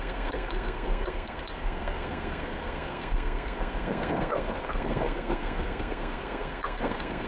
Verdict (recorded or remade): remade